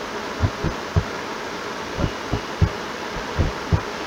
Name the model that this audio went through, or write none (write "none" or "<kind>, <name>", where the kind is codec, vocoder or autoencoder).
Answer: none